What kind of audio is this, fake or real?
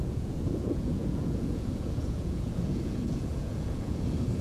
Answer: fake